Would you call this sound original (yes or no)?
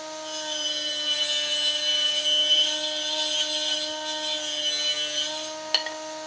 yes